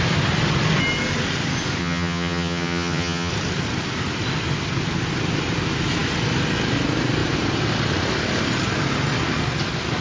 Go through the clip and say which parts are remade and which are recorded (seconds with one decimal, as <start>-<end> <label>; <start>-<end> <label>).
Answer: 0.0-1.8 recorded; 1.8-3.3 remade; 3.3-10.0 recorded